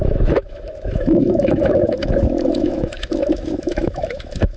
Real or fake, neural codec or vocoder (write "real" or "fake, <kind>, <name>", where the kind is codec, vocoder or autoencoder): fake, autoencoder, DAC-VAE